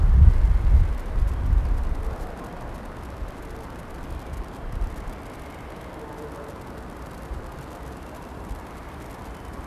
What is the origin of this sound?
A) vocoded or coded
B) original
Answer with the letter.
B